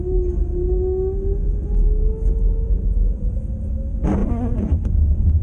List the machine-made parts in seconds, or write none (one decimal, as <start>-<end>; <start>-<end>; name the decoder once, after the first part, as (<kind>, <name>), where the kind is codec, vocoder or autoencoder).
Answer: 4.2-5.4 (vocoder, Vocos)